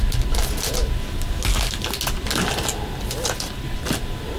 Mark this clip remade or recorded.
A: recorded